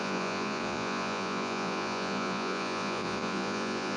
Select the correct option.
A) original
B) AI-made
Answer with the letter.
B